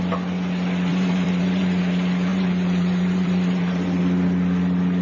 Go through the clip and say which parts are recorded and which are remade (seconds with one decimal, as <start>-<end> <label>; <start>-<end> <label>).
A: 0.0-0.9 recorded; 0.9-1.8 remade; 1.8-2.3 recorded; 2.3-4.0 remade; 4.0-5.0 recorded